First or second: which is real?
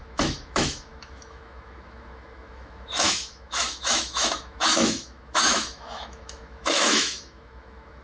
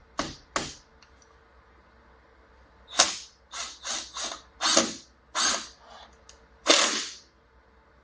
second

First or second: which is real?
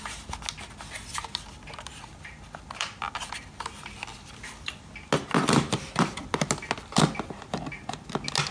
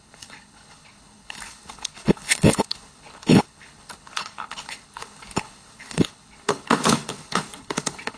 first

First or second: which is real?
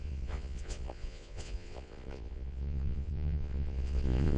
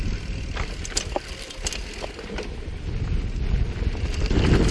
second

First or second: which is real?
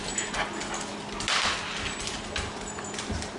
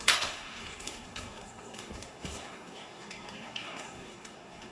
first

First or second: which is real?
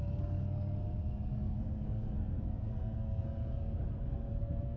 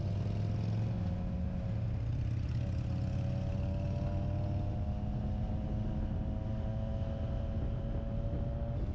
second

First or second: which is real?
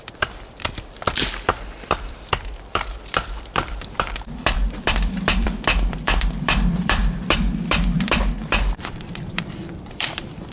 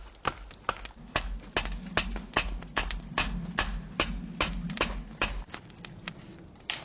second